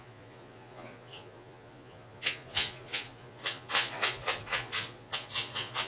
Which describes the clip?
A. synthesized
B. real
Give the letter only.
A